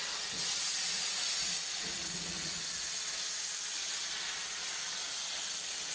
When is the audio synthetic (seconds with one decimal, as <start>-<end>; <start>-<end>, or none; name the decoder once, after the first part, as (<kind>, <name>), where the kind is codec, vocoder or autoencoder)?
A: 0.0-0.9 (vocoder, Vocos); 2.0-2.6